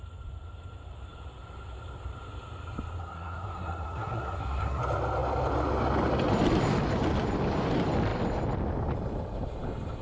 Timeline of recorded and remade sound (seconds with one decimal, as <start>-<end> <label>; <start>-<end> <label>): 0.0-3.0 recorded; 3.0-4.8 remade; 4.8-10.0 recorded